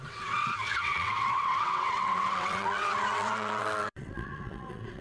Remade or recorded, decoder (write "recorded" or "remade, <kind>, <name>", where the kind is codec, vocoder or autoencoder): remade, vocoder, WaveNeXt